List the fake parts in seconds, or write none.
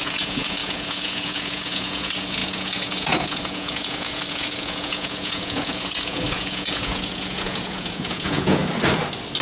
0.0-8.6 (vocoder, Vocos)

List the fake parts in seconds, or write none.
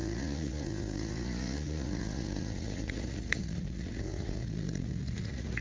0.0-5.6 (vocoder, Vocos)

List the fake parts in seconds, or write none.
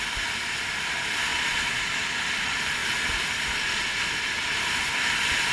1.3-1.8 (vocoder, Vocos)